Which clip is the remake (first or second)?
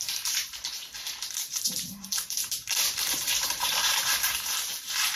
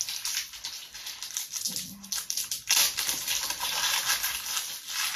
first